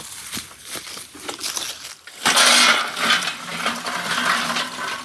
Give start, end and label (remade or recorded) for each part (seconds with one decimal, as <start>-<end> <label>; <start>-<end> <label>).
0.0-1.4 remade; 1.4-3.1 recorded; 3.1-5.0 remade